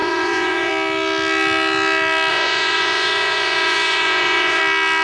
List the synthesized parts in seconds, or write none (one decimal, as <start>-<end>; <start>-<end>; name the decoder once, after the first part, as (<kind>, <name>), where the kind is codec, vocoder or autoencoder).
0.0-0.7 (vocoder, Vocos); 2.3-4.6